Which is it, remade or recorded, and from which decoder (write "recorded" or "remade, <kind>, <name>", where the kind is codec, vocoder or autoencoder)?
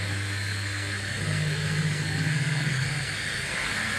remade, codec, SNAC